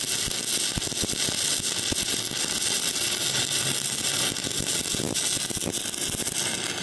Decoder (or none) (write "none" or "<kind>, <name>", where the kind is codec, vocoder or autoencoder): none